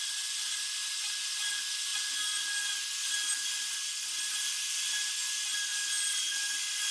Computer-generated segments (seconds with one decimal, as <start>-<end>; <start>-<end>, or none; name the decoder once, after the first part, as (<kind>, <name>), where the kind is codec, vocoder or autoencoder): 5.7-6.9 (vocoder, BigVGAN v2)